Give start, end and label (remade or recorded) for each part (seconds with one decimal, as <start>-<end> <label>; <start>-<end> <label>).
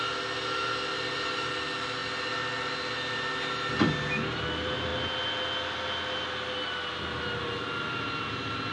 0.0-0.9 recorded; 0.9-1.5 remade; 1.5-8.7 recorded